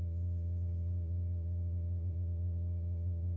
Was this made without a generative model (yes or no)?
no